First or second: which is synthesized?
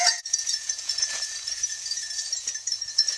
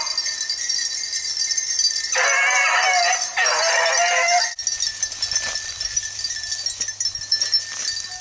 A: first